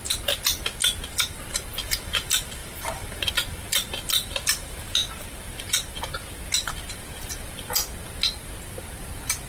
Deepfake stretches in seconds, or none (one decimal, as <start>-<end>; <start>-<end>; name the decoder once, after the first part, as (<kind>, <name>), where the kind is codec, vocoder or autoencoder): none